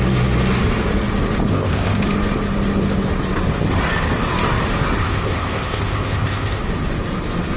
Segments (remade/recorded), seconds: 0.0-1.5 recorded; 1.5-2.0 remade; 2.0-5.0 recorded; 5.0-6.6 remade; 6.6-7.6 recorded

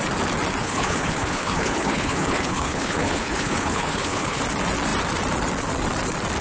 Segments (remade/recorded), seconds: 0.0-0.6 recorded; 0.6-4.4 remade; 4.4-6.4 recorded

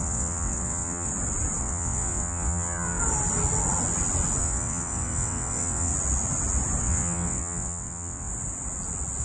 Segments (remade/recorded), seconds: 0.0-1.1 remade; 1.1-1.6 recorded; 1.6-3.0 remade; 3.0-4.4 recorded; 4.4-5.9 remade; 5.9-6.8 recorded; 6.8-8.3 remade; 8.3-9.2 recorded

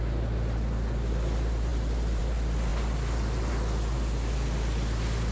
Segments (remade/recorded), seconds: 0.0-5.3 recorded

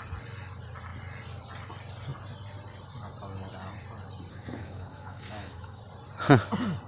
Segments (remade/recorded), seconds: 0.0-4.3 recorded; 4.3-5.8 remade; 5.8-6.9 recorded

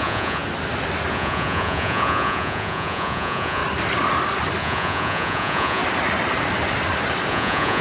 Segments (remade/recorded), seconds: 0.0-0.4 remade; 0.4-1.1 recorded; 1.1-3.6 remade; 3.6-4.6 recorded; 4.6-5.8 remade; 5.8-7.3 recorded; 7.3-7.8 remade

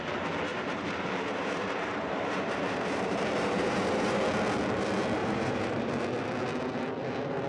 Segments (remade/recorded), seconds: 0.0-0.5 recorded; 0.5-4.2 remade; 4.2-5.2 recorded; 5.2-5.9 remade; 5.9-7.5 recorded